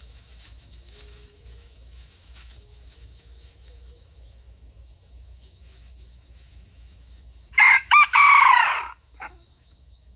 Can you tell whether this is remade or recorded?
remade